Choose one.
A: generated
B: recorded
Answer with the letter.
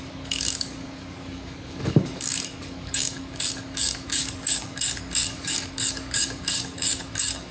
A